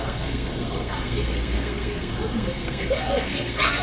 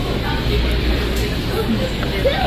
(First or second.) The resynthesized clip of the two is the first